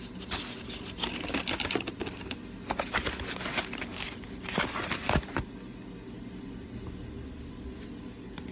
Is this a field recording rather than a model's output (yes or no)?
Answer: yes